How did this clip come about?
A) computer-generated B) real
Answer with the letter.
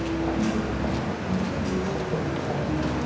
B